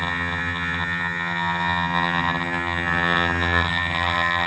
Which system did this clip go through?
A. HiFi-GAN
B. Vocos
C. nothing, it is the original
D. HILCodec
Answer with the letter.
A